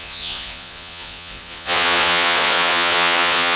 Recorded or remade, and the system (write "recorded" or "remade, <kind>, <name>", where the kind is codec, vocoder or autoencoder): remade, vocoder, Vocos